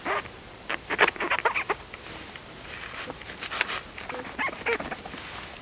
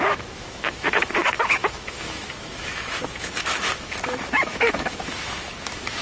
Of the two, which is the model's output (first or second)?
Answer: second